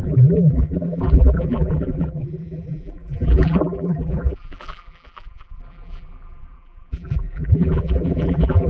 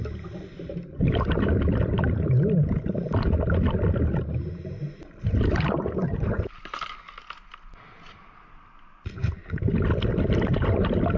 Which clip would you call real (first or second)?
second